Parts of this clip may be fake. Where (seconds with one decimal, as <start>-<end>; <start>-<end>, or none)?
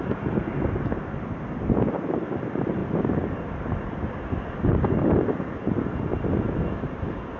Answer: none